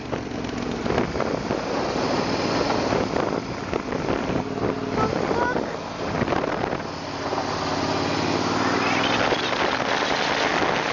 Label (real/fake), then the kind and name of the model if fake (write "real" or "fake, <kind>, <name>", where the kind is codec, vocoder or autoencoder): real